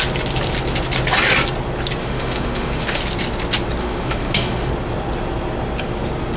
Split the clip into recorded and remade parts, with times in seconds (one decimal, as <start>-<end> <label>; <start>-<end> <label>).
0.0-2.0 recorded; 2.0-3.0 remade; 3.0-3.8 recorded; 3.8-4.7 remade; 4.7-6.4 recorded